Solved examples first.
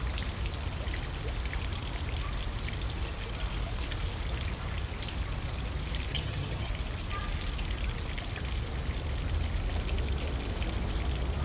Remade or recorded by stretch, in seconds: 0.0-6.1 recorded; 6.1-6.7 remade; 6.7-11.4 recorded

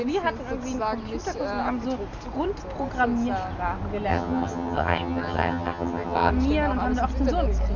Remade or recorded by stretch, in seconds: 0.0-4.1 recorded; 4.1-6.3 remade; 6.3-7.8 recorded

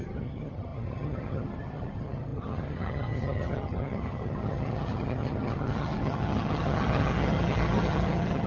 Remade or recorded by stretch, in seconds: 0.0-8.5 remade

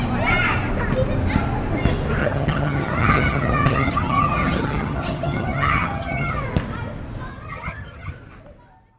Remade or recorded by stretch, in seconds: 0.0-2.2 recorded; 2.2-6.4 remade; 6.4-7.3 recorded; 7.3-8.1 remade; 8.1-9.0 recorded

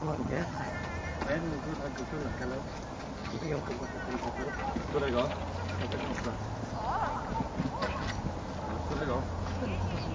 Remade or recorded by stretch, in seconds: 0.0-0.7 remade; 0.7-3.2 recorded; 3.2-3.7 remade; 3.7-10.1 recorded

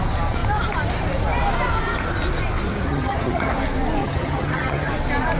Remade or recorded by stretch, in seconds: 0.0-2.9 recorded; 2.9-3.5 remade; 3.5-4.0 recorded; 4.0-4.9 remade; 4.9-5.4 recorded

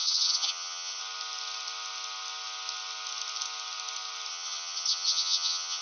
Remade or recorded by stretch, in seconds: 0.0-1.0 remade; 1.0-4.3 recorded; 4.3-5.8 remade